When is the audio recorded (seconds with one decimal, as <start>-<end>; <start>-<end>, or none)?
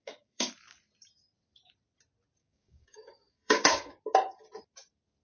0.5-2.4; 4.0-5.2